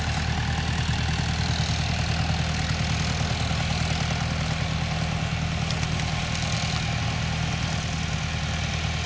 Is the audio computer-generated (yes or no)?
no